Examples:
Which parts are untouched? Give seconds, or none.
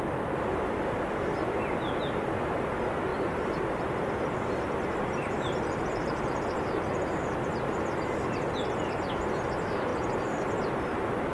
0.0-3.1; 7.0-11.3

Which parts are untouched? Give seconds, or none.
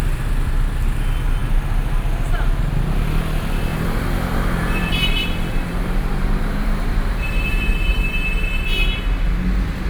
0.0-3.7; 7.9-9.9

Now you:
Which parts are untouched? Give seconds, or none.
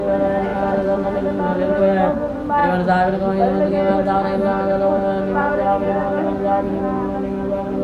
0.0-0.5; 1.8-7.8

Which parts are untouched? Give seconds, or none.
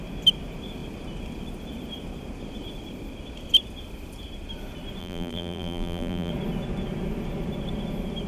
0.0-5.0; 6.3-8.3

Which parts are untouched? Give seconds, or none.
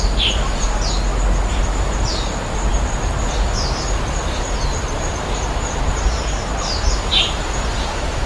0.4-1.5